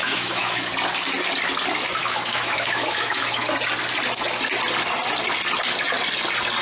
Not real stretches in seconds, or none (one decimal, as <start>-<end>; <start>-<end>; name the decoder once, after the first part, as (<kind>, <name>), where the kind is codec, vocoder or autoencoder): 0.0-0.7 (autoencoder, DAC-VAE); 2.0-3.5